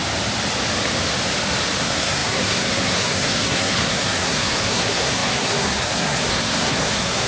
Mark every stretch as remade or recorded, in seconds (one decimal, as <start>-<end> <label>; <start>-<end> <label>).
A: 0.0-1.8 recorded; 1.8-7.3 remade